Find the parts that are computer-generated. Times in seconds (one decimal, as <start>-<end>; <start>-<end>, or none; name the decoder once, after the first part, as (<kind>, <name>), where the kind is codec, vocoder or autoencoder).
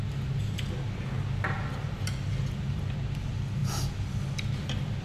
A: none